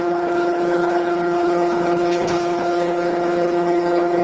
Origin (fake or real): fake